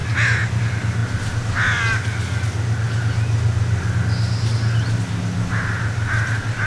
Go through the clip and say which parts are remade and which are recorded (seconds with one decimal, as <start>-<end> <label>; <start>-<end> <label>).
0.0-6.7 recorded